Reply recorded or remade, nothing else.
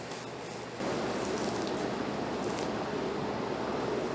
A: recorded